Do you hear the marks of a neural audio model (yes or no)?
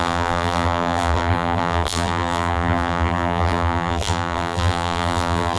yes